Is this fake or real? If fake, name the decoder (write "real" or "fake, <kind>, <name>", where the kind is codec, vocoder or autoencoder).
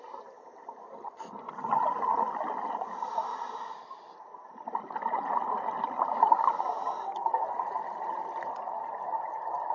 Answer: real